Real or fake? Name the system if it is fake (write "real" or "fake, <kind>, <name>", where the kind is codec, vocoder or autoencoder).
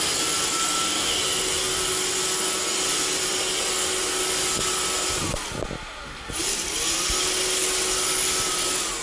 real